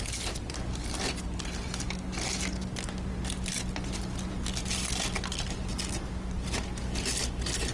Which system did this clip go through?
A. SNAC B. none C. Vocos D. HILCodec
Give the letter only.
B